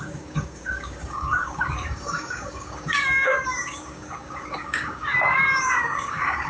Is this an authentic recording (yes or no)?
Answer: no